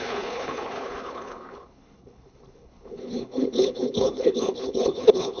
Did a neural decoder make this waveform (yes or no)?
yes